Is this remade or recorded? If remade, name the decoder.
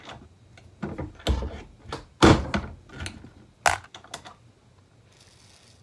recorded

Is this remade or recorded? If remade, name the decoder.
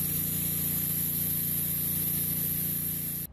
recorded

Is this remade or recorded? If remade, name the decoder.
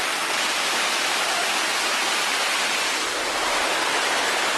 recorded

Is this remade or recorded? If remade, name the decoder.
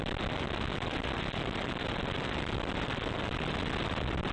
recorded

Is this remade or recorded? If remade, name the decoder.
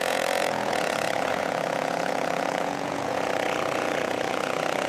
remade, vocoder, Vocos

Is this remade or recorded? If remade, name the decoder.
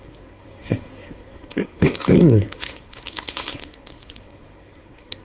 remade, codec, SNAC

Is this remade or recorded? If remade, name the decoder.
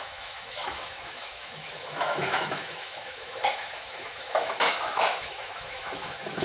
remade, autoencoder, DAC-VAE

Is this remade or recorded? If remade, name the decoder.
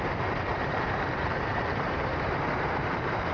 remade, vocoder, BigVGAN v2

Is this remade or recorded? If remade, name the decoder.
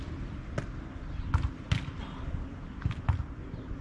recorded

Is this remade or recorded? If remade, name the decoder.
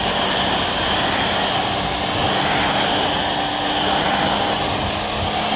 recorded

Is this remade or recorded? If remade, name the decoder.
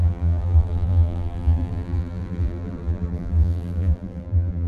remade, vocoder, BigVGAN v2